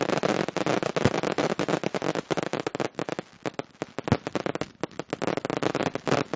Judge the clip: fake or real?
real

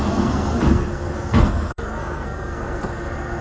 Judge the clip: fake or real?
fake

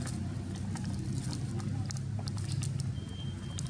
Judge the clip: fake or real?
real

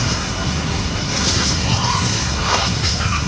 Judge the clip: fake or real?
fake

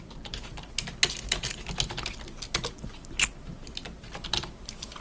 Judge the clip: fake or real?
real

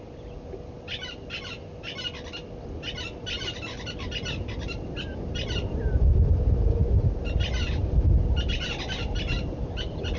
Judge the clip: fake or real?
real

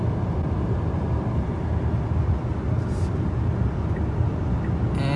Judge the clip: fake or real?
real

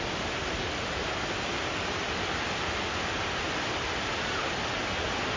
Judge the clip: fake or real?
real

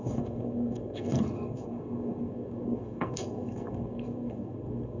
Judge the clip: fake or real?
fake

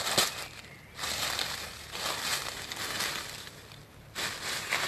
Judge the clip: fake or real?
real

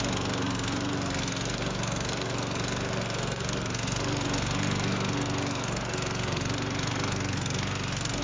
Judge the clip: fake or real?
fake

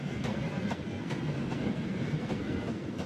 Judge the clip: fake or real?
fake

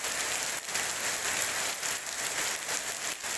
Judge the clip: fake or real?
real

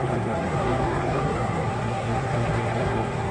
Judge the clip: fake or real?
fake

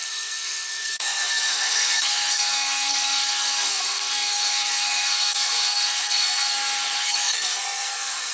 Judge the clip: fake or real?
fake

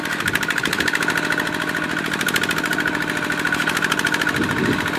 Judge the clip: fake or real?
real